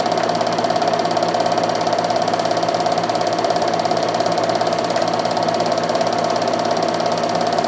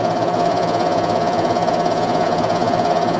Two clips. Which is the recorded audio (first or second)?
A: first